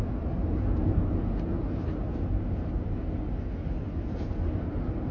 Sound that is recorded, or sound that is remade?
recorded